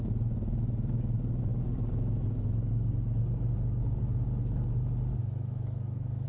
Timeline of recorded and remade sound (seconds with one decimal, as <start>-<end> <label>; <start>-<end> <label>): 0.0-5.2 recorded; 5.2-6.3 remade